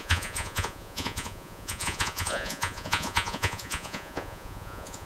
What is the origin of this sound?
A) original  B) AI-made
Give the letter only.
B